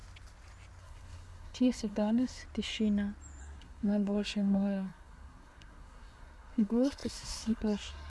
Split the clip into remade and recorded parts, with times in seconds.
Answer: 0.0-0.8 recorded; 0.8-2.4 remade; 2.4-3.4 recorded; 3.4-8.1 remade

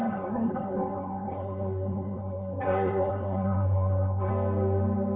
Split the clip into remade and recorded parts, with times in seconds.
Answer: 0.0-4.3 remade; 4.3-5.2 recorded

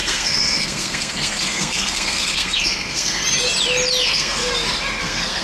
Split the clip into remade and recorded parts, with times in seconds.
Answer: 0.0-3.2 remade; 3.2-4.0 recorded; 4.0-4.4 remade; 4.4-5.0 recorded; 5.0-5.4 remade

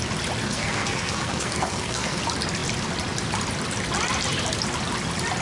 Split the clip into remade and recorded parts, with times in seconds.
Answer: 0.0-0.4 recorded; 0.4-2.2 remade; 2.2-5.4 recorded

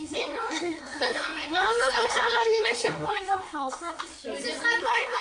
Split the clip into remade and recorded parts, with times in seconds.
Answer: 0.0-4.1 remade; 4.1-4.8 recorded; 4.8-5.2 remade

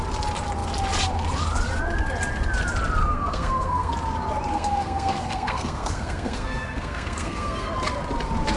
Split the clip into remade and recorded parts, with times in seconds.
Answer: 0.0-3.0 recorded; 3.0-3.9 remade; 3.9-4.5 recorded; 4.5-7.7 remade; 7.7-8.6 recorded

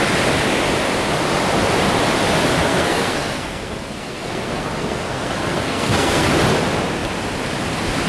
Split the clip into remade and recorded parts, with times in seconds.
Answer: 0.0-2.6 recorded; 2.6-6.3 remade; 6.3-8.1 recorded